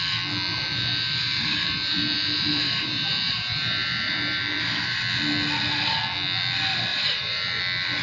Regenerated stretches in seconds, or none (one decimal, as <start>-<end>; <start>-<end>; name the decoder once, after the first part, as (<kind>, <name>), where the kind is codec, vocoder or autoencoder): 0.5-5.0 (vocoder, BigVGAN v2); 6.9-7.6